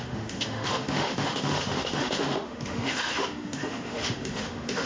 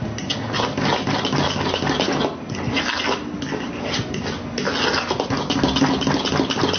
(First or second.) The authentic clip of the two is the second